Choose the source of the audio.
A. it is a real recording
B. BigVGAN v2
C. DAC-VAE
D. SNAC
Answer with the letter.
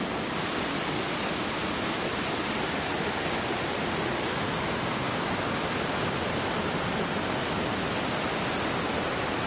A